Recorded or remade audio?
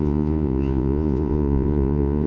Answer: remade